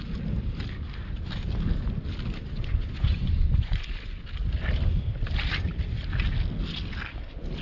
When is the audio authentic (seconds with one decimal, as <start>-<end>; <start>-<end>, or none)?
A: 0.0-2.4; 3.7-7.6